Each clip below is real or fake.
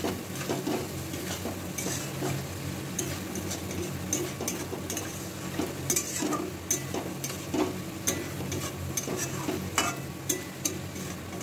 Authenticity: real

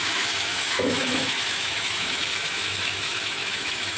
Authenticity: fake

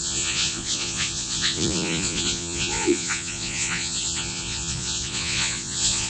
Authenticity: fake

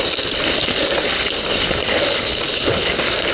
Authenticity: real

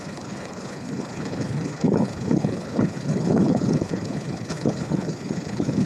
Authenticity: fake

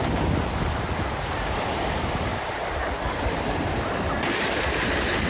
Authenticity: real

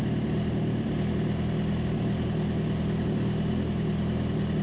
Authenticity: real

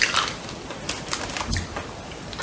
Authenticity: real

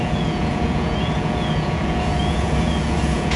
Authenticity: fake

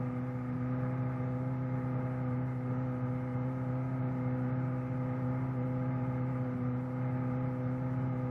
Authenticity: real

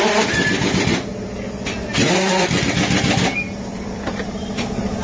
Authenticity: real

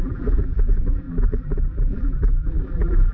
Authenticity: fake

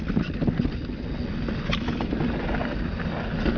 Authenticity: real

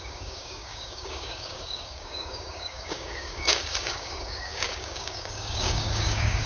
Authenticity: fake